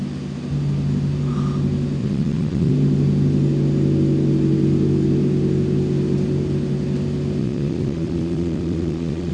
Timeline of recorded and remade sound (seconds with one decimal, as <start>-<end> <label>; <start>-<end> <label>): 0.0-2.0 recorded; 2.0-2.7 remade; 2.7-7.4 recorded; 7.4-9.3 remade